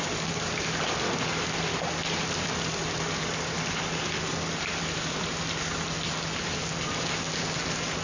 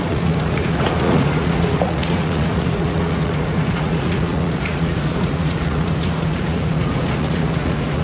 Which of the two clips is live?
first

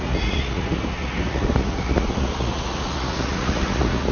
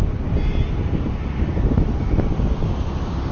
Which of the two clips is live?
second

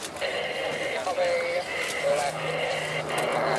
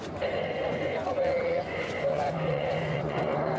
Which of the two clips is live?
first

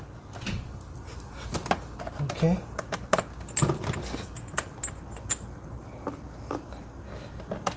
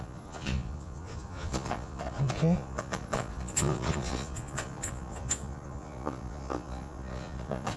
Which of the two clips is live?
first